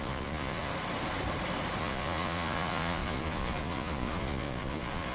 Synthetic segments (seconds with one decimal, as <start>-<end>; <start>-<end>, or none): 0.0-0.7; 1.8-5.1